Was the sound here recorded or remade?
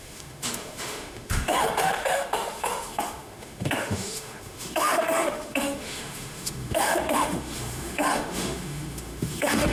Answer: remade